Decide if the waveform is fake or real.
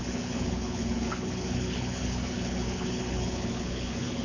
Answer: fake